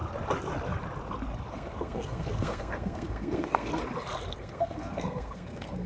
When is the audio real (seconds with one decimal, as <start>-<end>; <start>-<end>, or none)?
0.0-1.5; 3.7-4.3